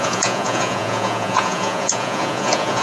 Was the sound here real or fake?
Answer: fake